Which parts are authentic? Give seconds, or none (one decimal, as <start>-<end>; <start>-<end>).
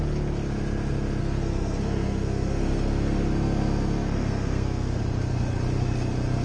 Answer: 0.0-1.2; 5.0-6.4